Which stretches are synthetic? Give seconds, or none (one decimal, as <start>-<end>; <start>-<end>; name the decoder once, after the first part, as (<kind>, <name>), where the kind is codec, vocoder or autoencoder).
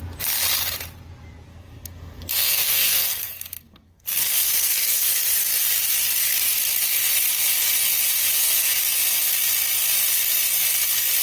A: 1.5-5.1 (codec, SNAC); 8.3-8.8